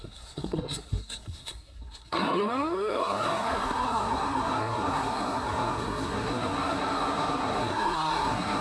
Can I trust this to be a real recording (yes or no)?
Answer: no